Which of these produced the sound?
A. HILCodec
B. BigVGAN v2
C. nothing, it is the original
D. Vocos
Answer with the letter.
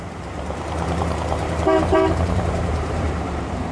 B